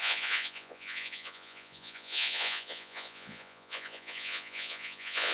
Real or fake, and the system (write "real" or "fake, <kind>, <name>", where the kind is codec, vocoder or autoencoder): fake, vocoder, Vocos